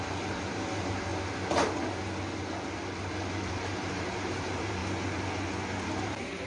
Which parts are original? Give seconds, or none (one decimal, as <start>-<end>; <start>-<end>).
1.1-3.5; 4.8-6.0